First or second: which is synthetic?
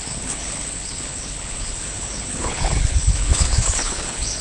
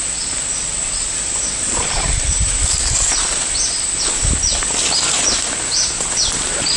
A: first